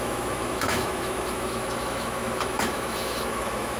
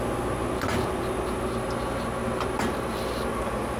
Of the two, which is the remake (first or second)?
first